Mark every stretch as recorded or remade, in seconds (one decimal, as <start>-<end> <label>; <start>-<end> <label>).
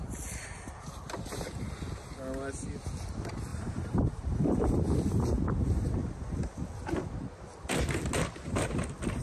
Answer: 0.0-3.5 recorded; 3.5-4.9 remade; 4.9-9.2 recorded